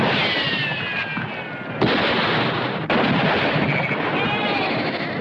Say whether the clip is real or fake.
real